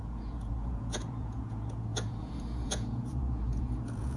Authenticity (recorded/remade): remade